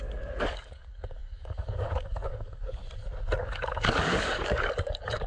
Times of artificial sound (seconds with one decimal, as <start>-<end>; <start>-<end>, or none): 0.0-2.8; 3.4-5.3